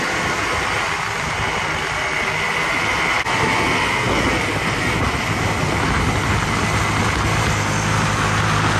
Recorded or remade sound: recorded